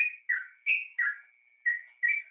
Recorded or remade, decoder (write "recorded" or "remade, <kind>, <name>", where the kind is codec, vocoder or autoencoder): recorded